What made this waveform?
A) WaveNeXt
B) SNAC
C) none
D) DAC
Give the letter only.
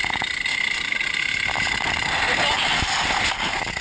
C